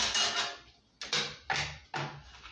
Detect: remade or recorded recorded